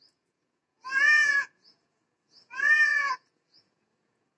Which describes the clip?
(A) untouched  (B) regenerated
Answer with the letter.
B